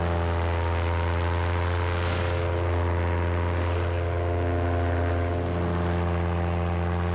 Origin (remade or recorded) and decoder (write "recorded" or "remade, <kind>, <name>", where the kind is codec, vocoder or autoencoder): recorded